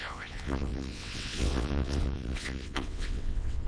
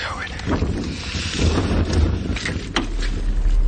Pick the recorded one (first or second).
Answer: second